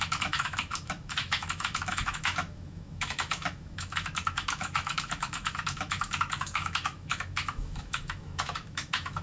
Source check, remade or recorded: remade